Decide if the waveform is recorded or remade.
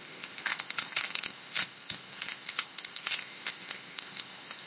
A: remade